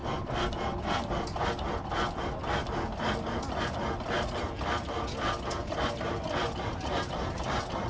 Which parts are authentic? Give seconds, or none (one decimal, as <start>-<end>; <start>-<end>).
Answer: 0.0-7.9